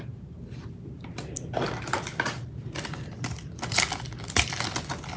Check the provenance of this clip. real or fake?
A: real